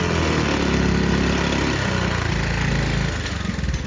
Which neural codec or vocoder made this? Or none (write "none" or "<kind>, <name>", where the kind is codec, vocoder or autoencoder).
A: none